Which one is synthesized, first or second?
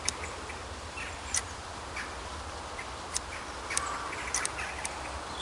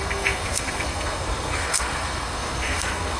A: second